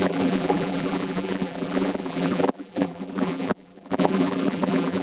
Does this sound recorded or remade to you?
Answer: remade